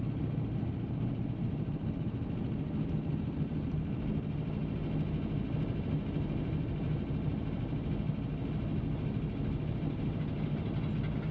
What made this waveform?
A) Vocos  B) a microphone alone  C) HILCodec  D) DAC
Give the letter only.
B